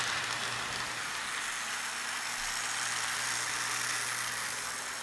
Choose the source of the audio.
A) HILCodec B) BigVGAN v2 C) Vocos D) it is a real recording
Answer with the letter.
D